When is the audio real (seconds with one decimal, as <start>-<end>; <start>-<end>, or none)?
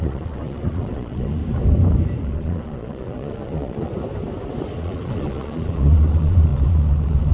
1.4-2.2; 3.9-4.8